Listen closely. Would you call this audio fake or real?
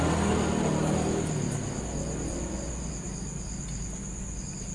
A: real